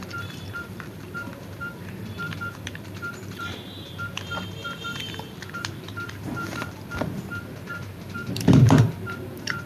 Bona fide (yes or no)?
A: no